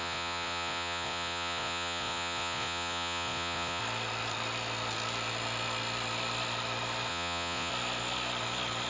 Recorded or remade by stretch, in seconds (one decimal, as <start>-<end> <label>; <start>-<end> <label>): 0.0-3.8 remade; 3.8-7.1 recorded; 7.1-7.7 remade; 7.7-8.9 recorded